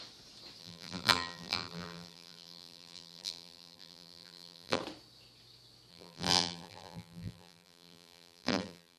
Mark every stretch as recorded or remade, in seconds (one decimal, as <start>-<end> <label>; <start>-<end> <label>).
0.0-0.6 recorded; 0.6-4.8 remade; 4.8-5.9 recorded; 5.9-9.0 remade